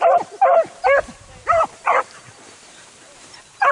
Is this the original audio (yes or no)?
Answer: no